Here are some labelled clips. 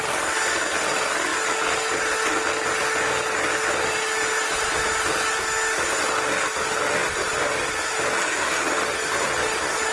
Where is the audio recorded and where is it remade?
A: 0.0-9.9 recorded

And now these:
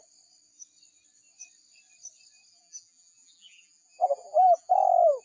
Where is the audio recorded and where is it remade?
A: 0.0-2.5 recorded; 2.5-4.7 remade; 4.7-5.2 recorded

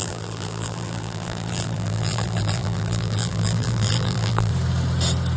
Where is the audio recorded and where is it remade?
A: 0.0-4.5 remade; 4.5-5.4 recorded